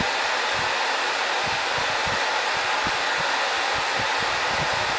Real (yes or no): yes